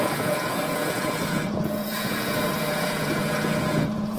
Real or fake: fake